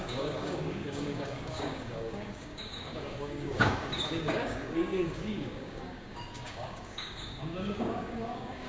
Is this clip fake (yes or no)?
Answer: yes